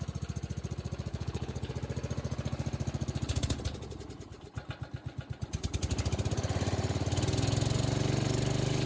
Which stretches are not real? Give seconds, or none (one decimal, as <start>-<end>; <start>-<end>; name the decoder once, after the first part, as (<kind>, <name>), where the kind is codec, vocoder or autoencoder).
1.1-1.7 (codec, HILCodec)